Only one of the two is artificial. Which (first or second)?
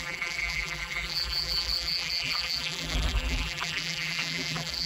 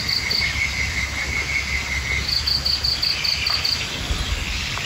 first